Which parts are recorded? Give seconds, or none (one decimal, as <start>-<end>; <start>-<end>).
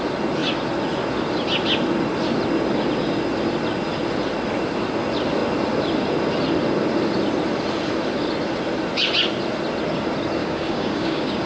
0.0-10.4